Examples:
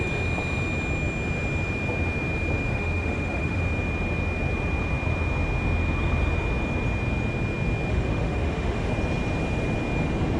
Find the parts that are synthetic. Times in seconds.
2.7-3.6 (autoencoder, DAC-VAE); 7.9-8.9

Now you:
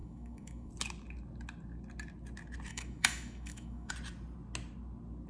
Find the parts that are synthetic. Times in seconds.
0.0-0.7 (autoencoder, DAC-VAE); 2.7-3.9

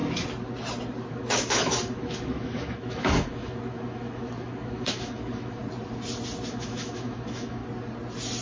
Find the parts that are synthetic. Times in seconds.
1.1-5.6 (autoencoder, DAC-VAE); 6.5-7.6

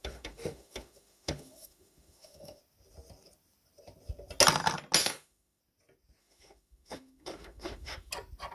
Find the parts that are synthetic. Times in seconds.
0.0-2.6 (autoencoder, DAC-VAE); 5.0-5.6; 6.2-8.1

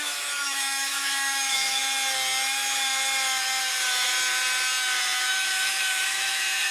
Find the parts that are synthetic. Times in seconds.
0.0-1.8 (autoencoder, DAC-VAE); 5.3-6.7

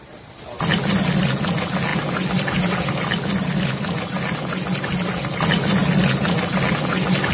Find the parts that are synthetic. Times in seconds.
none